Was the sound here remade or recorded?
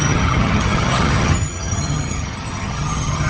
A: remade